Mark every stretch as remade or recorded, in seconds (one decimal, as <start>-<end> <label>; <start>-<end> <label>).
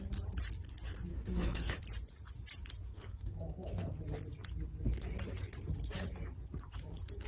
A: 0.0-1.1 recorded; 1.1-1.8 remade; 1.8-2.9 recorded; 2.9-4.0 remade; 4.0-7.3 recorded